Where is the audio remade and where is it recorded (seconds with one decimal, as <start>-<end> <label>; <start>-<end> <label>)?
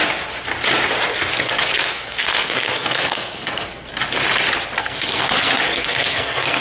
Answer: 0.0-1.4 recorded; 1.4-3.9 remade; 3.9-4.8 recorded; 4.8-6.6 remade